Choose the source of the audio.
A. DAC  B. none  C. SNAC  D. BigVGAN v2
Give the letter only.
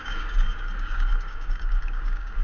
A